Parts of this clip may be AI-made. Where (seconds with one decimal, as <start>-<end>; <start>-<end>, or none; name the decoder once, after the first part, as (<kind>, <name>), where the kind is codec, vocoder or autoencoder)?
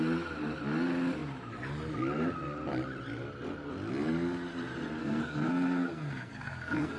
5.0-7.0 (codec, SNAC)